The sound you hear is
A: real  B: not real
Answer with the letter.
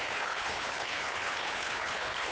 B